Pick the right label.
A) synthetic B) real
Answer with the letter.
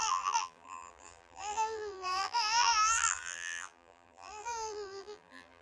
A